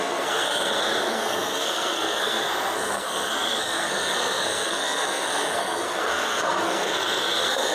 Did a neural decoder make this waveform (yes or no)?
yes